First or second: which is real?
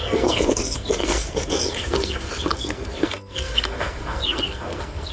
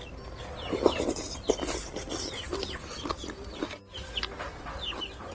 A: second